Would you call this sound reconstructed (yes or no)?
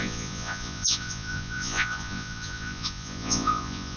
yes